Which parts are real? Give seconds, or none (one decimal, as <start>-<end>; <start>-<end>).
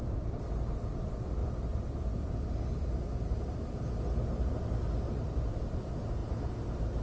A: 0.0-7.0